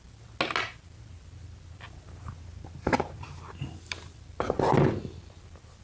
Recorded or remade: recorded